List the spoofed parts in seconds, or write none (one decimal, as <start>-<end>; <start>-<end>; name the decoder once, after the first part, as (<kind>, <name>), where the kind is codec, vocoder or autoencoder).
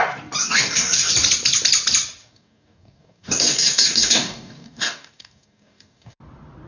0.4-1.1 (codec, DAC); 2.2-6.2